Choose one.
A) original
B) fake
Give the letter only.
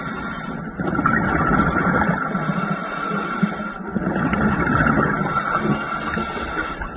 A